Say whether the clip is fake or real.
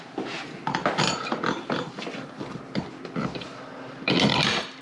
real